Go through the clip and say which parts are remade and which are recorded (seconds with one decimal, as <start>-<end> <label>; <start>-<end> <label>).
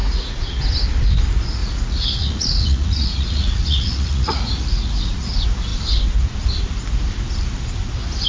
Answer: 0.0-0.6 remade; 0.6-1.6 recorded; 1.6-5.3 remade; 5.3-8.3 recorded